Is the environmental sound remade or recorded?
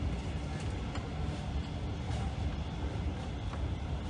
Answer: recorded